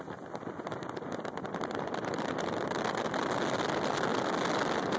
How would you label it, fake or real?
real